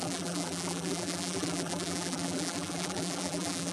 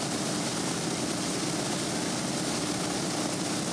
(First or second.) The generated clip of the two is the first